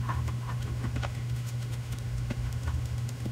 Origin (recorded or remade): remade